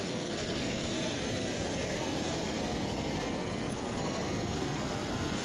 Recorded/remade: remade